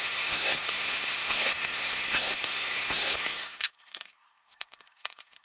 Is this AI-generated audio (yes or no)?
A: yes